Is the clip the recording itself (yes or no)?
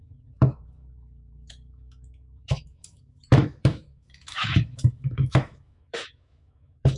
no